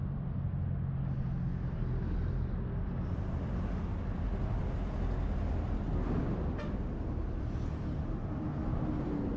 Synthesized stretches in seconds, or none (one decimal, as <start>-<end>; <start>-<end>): 1.5-2.5